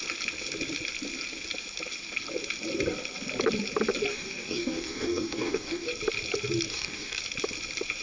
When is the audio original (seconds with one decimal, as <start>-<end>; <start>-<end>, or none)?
0.0-4.1; 5.9-6.7; 7.2-8.0